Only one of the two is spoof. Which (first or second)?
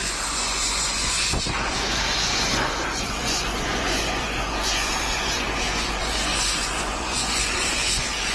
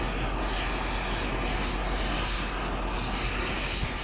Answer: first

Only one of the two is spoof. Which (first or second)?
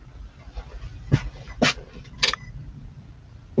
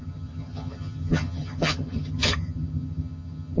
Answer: second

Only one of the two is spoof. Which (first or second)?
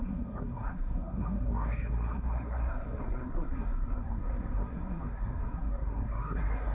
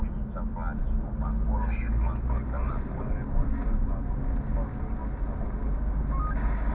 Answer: first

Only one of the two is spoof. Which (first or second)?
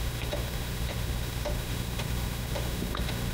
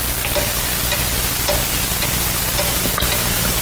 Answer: first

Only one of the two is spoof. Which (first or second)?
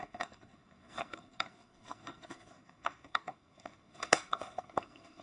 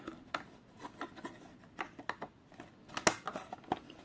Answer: first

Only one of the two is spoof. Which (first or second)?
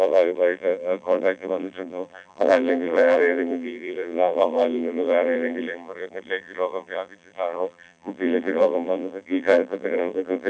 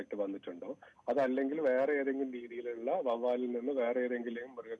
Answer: first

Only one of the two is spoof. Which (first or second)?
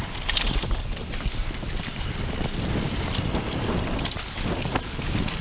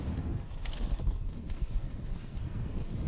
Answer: second